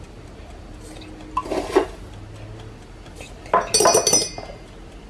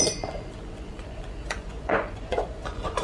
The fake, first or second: second